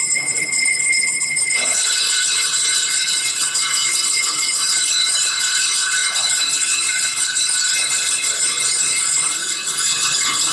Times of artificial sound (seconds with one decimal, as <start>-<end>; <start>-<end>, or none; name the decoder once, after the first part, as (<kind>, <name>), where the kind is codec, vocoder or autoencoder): 0.0-10.5 (codec, HILCodec)